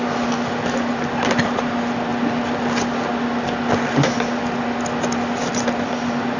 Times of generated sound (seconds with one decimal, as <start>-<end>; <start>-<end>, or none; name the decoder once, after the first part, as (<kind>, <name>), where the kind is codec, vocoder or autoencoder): none